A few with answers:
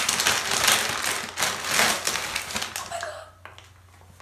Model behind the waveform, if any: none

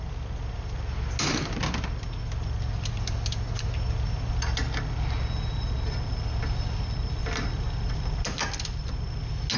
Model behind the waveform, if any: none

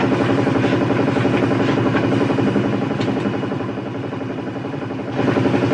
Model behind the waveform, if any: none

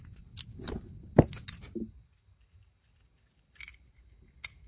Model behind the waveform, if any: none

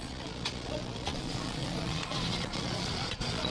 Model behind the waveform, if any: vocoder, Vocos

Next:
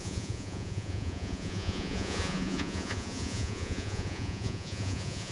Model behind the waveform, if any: vocoder, Vocos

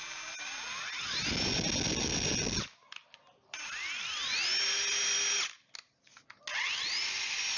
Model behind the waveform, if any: none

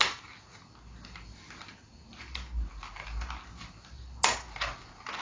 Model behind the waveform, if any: none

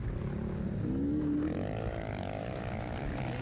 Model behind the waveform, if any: none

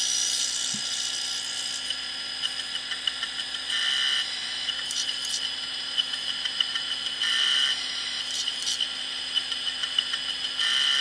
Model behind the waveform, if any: none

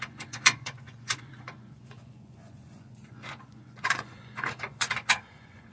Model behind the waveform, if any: vocoder, Vocos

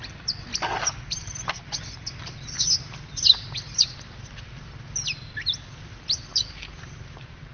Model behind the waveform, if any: none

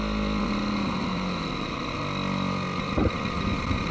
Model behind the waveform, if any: none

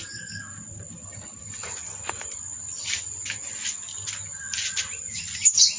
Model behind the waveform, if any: none